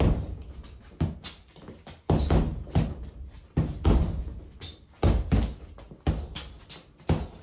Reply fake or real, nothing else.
real